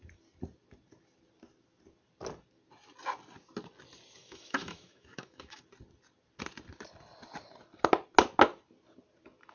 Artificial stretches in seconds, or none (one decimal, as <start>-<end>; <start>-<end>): 4.2-5.6